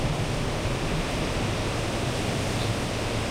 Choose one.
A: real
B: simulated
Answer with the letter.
A